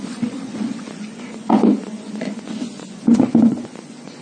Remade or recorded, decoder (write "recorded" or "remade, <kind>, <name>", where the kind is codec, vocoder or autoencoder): remade, vocoder, Vocos